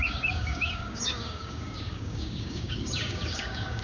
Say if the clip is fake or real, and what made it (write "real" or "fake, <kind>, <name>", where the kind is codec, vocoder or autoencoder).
fake, codec, DAC